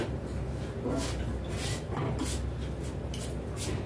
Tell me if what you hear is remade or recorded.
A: recorded